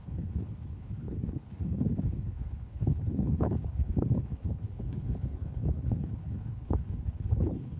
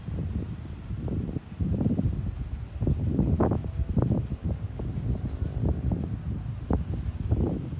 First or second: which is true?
second